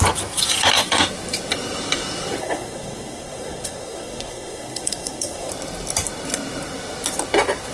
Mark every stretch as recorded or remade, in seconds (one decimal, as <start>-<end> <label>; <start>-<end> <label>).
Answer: 0.0-2.4 recorded; 2.4-5.5 remade; 5.5-7.7 recorded